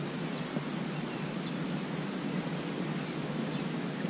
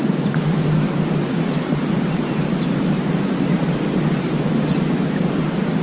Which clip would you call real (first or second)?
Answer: first